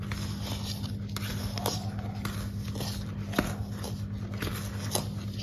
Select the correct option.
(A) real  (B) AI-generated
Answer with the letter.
A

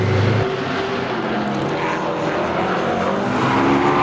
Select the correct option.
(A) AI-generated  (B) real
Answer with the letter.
B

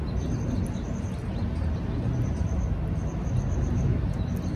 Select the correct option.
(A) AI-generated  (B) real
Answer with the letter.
B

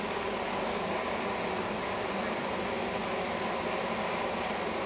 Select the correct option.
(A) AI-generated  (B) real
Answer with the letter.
B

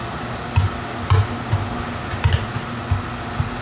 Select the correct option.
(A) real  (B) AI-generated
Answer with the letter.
A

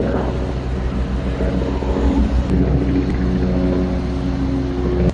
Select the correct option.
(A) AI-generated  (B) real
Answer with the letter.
B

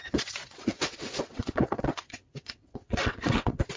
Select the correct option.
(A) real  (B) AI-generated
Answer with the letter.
B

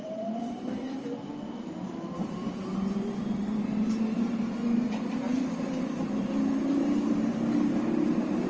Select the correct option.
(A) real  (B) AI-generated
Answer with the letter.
B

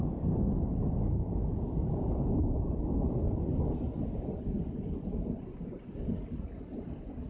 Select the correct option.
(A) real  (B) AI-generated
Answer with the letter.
A